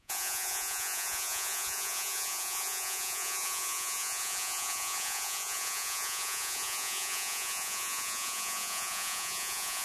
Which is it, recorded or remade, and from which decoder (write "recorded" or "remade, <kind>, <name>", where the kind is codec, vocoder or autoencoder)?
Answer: remade, vocoder, Vocos